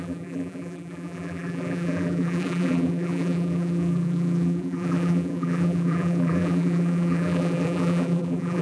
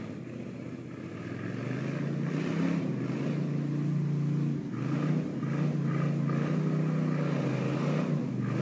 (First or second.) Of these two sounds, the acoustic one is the second